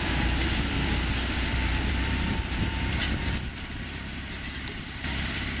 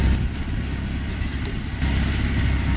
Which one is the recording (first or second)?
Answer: second